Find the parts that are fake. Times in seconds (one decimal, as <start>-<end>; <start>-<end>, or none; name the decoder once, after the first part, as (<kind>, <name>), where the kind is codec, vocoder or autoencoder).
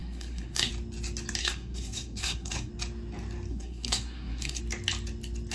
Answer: 0.0-0.7 (codec, SNAC); 1.4-2.7; 3.5-4.6